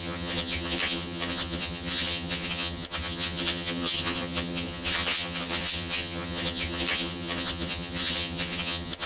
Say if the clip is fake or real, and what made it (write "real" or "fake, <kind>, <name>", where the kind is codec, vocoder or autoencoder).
fake, vocoder, HiFi-GAN